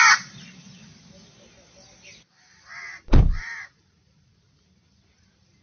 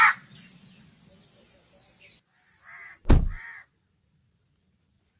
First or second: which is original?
second